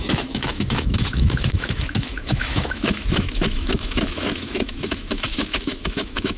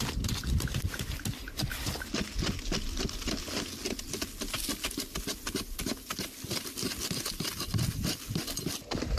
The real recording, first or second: second